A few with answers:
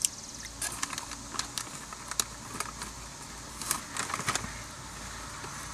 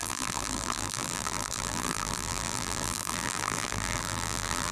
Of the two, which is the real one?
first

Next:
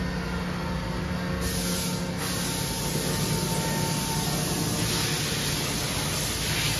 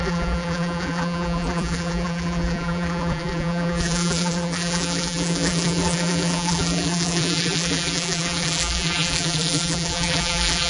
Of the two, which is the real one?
first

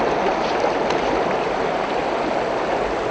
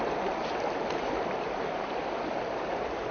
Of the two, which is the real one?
first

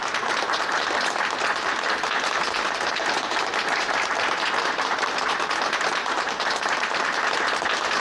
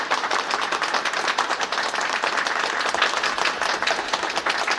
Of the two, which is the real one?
second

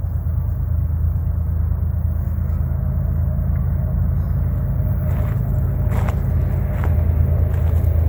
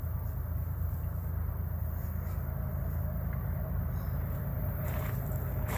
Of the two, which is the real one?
first